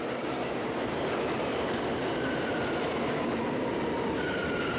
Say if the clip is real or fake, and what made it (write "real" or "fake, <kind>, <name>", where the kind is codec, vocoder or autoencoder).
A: real